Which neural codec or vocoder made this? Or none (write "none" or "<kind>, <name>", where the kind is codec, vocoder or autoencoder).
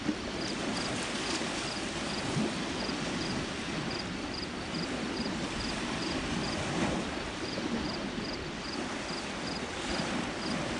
none